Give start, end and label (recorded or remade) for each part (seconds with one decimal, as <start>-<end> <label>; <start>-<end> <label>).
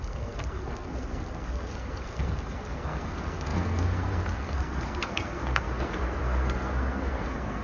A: 0.0-7.6 remade